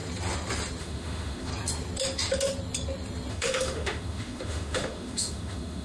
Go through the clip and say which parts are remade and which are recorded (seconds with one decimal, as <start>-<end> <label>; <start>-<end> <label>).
0.0-0.8 recorded; 0.8-1.5 remade; 1.5-3.3 recorded; 3.3-5.8 remade